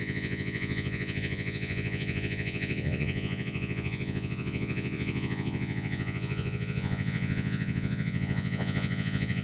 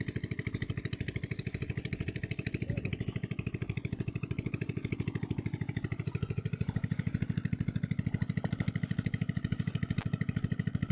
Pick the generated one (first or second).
first